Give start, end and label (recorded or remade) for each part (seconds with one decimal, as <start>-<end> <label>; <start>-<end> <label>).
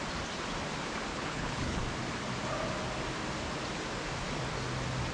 0.0-1.1 recorded; 1.1-1.8 remade; 1.8-5.1 recorded